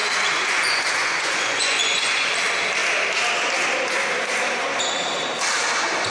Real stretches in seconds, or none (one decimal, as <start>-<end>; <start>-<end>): 2.3-6.1

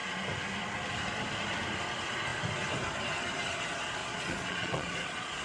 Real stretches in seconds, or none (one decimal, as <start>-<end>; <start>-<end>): 0.0-4.0

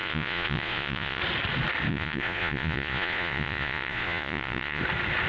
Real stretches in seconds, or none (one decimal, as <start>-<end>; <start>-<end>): 1.2-1.9; 4.8-5.3

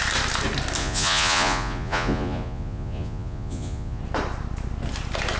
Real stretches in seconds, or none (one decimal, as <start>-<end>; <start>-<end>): 0.0-0.8; 4.0-5.4

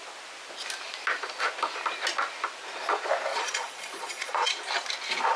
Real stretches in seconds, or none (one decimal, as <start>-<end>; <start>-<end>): 0.0-3.3; 4.5-5.4

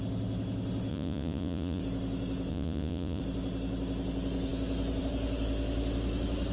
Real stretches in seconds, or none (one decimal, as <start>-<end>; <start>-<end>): 0.0-0.9; 1.8-2.5; 3.2-6.5